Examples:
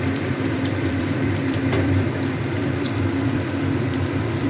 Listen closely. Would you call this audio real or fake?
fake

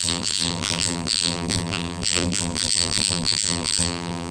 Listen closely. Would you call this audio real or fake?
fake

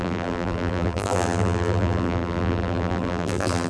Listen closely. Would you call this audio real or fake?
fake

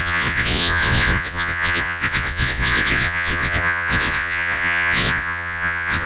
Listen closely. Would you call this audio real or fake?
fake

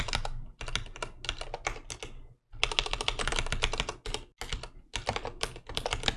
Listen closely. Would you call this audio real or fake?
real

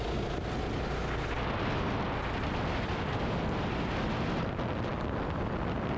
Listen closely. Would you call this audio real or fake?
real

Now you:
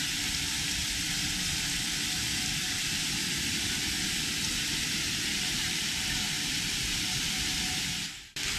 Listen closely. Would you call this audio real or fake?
fake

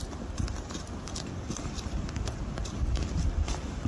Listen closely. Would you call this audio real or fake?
real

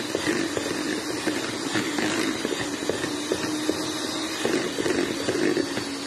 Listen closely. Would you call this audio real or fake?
real